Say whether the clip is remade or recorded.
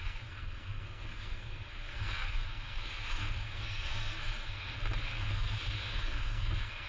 remade